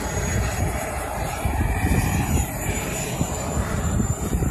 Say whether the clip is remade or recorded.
remade